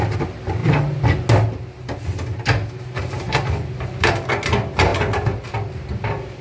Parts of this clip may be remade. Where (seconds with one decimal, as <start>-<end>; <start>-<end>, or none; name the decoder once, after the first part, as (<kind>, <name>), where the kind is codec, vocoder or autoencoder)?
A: none